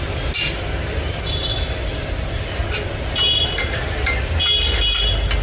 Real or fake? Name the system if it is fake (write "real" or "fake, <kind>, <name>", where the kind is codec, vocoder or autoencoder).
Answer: real